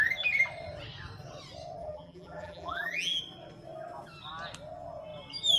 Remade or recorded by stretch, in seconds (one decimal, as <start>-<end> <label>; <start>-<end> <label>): 0.0-1.8 recorded; 1.8-3.2 remade; 3.2-5.6 recorded

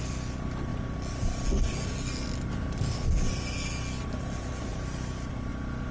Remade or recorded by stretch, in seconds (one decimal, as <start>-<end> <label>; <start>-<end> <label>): 0.0-4.7 recorded; 4.7-5.5 remade; 5.5-5.9 recorded

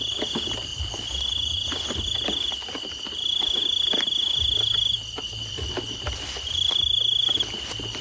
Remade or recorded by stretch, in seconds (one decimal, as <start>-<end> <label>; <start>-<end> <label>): 0.0-0.7 remade; 0.7-1.3 recorded; 1.3-3.6 remade; 3.6-5.5 recorded; 5.5-8.0 remade

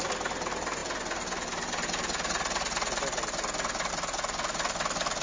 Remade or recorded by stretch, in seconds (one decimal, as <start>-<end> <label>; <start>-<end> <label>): 0.0-5.2 recorded

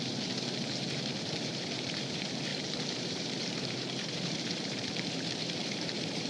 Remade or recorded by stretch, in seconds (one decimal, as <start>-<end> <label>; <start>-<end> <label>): 0.0-6.3 remade

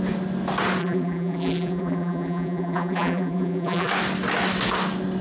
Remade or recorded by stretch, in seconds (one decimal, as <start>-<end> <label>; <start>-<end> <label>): 0.0-0.8 recorded; 0.8-3.9 remade; 3.9-5.2 recorded